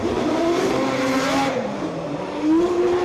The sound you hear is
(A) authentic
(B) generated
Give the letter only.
B